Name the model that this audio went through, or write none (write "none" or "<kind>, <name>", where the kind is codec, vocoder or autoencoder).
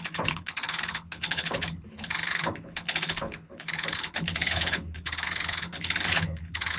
codec, HILCodec